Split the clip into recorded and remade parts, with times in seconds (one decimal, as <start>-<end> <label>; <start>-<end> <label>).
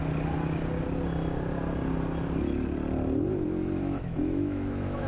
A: 0.0-3.8 recorded; 3.8-5.1 remade